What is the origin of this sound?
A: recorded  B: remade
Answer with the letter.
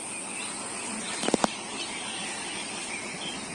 A